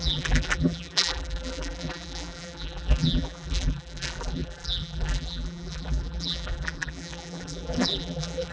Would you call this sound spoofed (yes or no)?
yes